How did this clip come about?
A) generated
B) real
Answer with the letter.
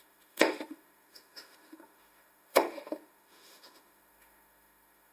A